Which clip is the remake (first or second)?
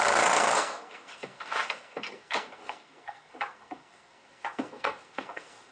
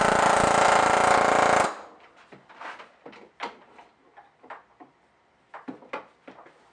first